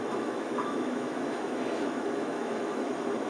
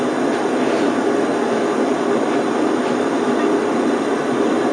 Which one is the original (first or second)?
second